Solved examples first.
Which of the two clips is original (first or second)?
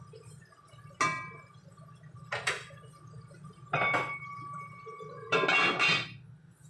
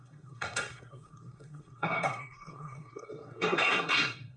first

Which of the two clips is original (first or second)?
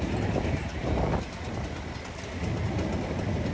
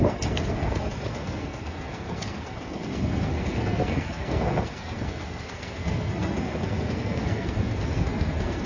first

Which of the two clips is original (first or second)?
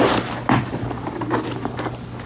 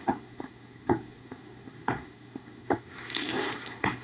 first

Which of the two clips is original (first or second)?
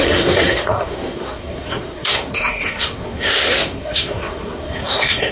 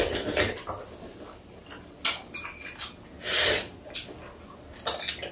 second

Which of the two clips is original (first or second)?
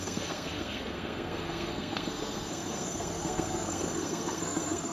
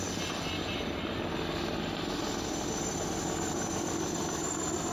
second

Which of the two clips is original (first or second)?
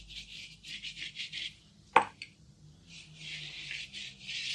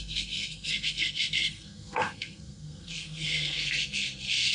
first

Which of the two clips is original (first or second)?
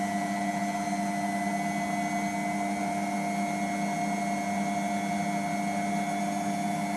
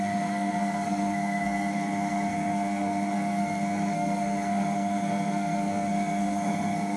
first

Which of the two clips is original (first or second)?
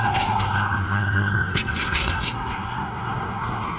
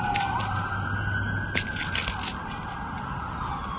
second